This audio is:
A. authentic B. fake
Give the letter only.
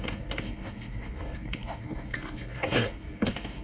B